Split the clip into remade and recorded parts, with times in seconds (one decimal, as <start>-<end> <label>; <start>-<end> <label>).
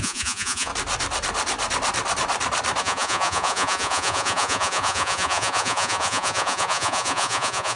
0.0-0.7 remade; 0.7-2.8 recorded; 2.8-7.8 remade